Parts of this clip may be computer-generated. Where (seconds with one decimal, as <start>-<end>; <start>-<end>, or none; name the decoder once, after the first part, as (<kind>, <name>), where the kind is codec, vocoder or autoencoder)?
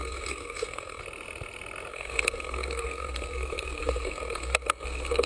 0.0-1.0 (codec, SNAC); 1.9-5.3